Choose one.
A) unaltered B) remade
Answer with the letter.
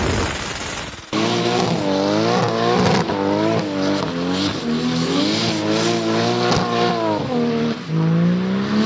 A